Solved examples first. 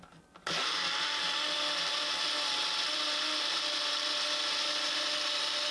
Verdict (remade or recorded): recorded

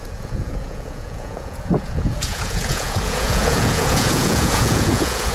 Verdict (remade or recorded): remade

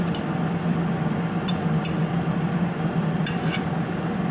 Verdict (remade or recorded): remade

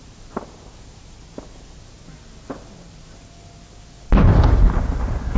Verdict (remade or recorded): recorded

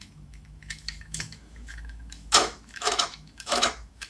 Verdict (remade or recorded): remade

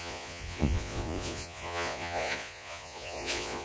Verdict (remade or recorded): remade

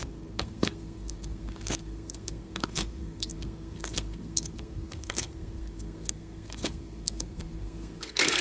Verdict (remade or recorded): remade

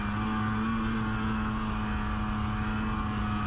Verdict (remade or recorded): recorded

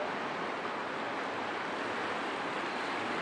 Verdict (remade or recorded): recorded